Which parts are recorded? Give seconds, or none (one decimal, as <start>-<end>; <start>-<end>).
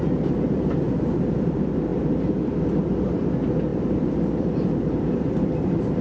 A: none